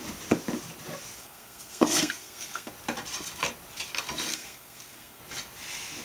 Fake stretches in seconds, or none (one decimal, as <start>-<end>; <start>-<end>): 1.2-2.7; 4.3-5.2